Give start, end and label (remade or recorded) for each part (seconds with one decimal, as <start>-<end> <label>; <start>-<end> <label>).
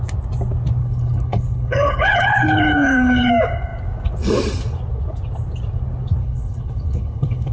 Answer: 0.0-0.8 recorded; 0.8-3.3 remade; 3.3-6.2 recorded; 6.2-7.5 remade